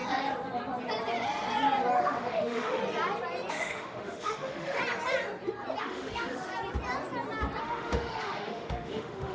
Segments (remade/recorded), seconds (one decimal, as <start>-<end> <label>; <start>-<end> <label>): 0.0-2.0 recorded; 2.0-2.8 remade; 2.8-3.5 recorded; 3.5-4.8 remade; 4.8-5.8 recorded; 5.8-6.5 remade; 6.5-7.6 recorded; 7.6-9.3 remade

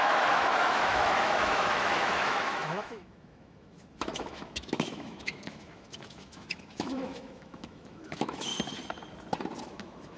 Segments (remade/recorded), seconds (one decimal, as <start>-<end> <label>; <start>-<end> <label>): 0.0-8.5 remade; 8.5-9.6 recorded; 9.6-10.2 remade

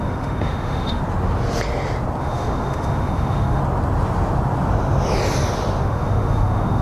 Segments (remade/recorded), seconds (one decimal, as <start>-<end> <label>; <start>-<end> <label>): 0.0-1.0 remade; 1.0-2.2 recorded; 2.2-3.6 remade; 3.6-5.8 recorded; 5.8-6.8 remade